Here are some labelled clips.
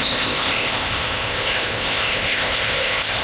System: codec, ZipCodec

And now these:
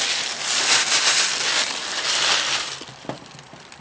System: none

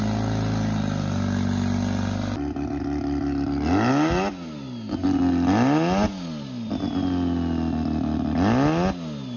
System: none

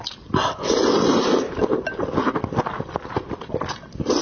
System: none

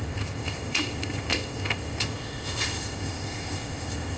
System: codec, ZipCodec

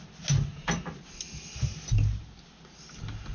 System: none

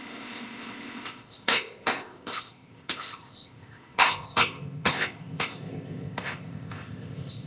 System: codec, ZipCodec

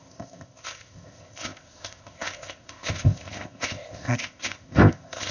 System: codec, ZipCodec